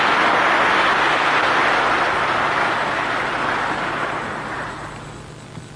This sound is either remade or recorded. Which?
recorded